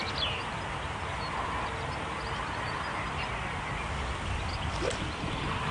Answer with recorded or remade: recorded